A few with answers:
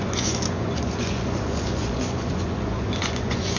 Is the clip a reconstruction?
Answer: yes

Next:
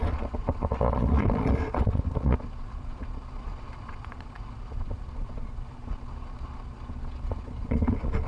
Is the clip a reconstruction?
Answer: yes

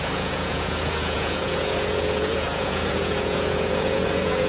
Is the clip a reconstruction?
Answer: yes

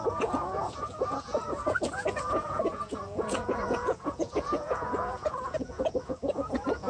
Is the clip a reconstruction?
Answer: yes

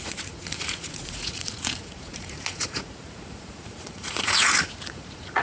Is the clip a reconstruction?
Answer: yes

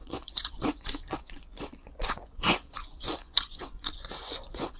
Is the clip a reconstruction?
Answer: yes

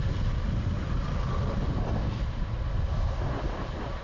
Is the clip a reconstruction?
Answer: no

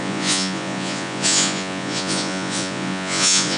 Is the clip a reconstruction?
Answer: yes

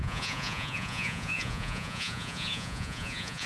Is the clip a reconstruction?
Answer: yes